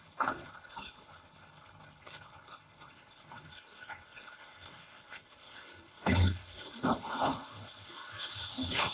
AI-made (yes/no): yes